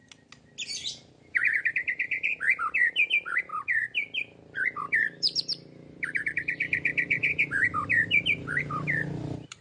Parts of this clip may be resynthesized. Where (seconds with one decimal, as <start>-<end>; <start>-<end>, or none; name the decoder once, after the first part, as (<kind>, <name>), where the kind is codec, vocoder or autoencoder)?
1.1-9.6 (vocoder, BigVGAN v2)